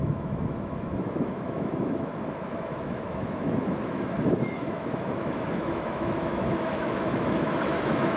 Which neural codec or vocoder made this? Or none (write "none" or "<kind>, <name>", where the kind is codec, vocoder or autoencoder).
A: autoencoder, DAC-VAE